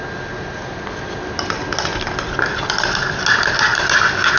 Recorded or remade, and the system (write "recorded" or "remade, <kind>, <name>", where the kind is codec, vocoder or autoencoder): recorded